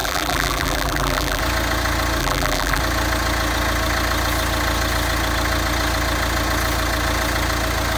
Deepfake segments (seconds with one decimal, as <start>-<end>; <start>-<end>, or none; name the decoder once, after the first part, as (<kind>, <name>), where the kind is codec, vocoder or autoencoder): 0.0-1.4 (vocoder, BigVGAN v2); 2.2-2.8